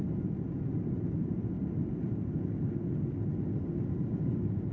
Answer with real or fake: real